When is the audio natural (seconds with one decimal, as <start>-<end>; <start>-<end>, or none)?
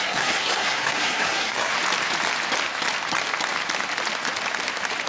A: 1.7-5.1